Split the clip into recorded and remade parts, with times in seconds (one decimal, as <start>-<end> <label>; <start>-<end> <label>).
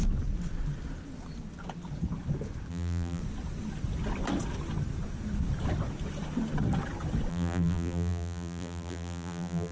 0.0-2.7 recorded; 2.7-3.2 remade; 3.2-7.3 recorded; 7.3-9.7 remade